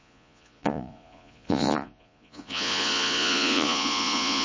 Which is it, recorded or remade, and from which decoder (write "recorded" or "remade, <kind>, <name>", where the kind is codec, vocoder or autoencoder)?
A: remade, vocoder, Vocos